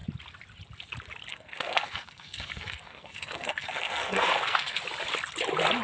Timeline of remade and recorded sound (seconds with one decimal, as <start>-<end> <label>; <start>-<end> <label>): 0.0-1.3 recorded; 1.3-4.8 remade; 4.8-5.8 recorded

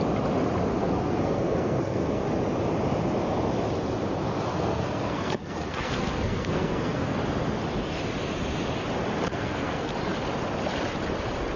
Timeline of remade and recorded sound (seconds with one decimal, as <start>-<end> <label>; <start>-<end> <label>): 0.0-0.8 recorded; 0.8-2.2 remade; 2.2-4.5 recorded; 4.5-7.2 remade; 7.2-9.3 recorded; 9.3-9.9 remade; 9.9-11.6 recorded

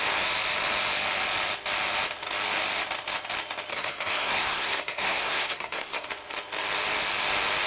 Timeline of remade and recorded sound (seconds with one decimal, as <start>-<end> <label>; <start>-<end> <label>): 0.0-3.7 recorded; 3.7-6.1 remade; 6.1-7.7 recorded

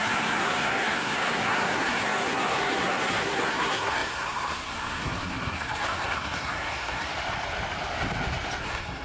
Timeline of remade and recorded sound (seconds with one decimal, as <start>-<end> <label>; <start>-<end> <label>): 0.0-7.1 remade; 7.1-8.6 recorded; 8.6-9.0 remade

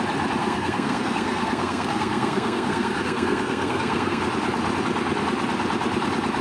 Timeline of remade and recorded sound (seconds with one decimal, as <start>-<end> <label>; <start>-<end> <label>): 0.0-0.4 recorded; 0.4-4.2 remade; 4.2-6.4 recorded

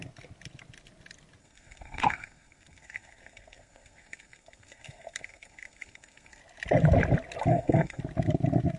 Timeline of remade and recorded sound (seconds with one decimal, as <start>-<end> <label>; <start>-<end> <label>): 0.0-1.4 recorded; 1.4-6.4 remade; 6.4-7.5 recorded; 7.5-8.0 remade; 8.0-8.8 recorded